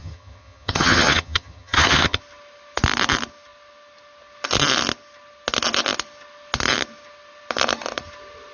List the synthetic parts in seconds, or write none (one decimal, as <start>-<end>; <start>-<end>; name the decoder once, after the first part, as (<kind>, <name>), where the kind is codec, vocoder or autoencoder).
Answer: 0.0-2.2 (vocoder, HiFi-GAN)